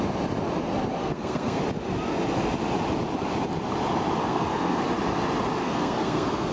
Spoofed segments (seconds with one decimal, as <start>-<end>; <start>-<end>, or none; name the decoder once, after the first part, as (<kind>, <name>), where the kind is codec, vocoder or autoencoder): 1.0-1.6 (codec, SNAC); 4.2-4.8; 5.6-6.5